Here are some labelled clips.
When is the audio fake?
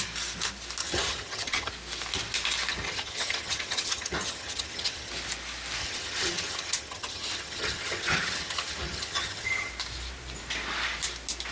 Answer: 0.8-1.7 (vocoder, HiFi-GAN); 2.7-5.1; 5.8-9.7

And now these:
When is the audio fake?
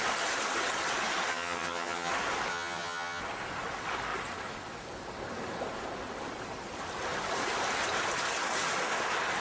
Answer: 1.3-2.1 (vocoder, HiFi-GAN); 2.5-3.2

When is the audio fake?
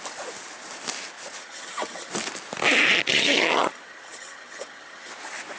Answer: 1.4-2.1 (vocoder, HiFi-GAN); 3.1-5.1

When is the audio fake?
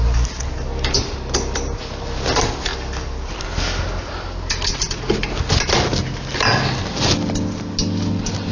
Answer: none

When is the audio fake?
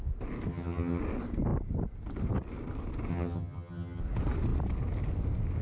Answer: 0.5-1.0 (vocoder, HiFi-GAN); 3.1-4.0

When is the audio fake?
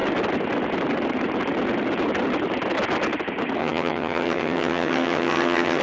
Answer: 3.6-5.8 (vocoder, HiFi-GAN)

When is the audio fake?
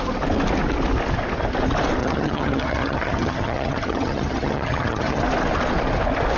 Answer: 2.0-5.2 (vocoder, HiFi-GAN)